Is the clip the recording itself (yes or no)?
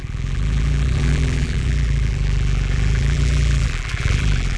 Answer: no